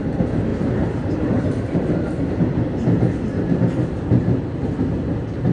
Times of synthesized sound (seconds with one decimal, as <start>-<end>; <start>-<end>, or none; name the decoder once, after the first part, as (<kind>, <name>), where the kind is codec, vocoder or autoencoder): 0.5-2.2 (vocoder, BigVGAN v2)